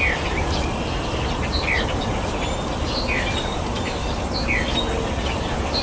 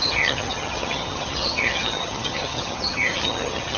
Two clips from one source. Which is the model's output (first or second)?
second